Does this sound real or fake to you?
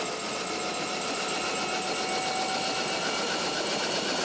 real